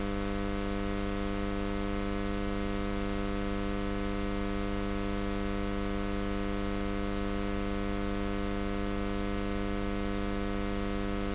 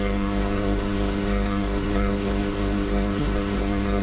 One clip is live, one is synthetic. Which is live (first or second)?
first